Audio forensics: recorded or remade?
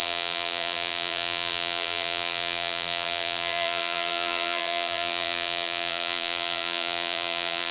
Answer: remade